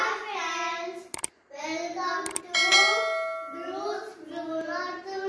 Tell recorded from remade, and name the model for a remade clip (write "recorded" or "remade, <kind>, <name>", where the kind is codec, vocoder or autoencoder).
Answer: recorded